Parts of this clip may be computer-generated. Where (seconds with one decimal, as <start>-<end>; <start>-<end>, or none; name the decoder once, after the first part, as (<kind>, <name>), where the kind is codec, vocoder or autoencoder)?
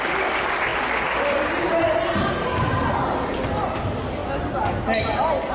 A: none